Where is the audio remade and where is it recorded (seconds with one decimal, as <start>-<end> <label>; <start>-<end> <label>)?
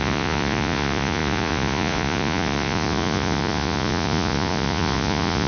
0.0-5.5 remade